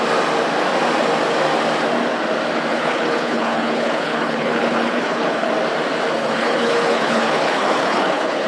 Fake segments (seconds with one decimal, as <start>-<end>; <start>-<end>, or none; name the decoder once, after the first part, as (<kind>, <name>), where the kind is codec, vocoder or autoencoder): 2.7-5.5 (codec, HILCodec); 6.2-8.5